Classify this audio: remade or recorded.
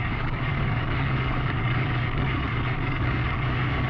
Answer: remade